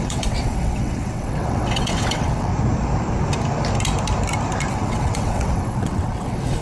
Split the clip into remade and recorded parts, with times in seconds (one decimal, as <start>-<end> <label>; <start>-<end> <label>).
0.0-2.5 remade; 2.5-4.7 recorded; 4.7-6.6 remade